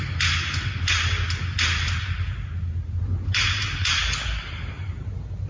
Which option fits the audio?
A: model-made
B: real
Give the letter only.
B